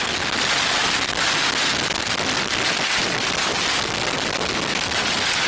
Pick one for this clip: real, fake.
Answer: real